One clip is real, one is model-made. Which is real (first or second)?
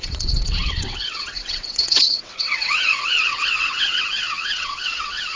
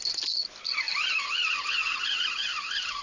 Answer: second